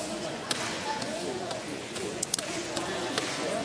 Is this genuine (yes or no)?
no